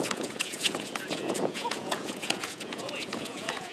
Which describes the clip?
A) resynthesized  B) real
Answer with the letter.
A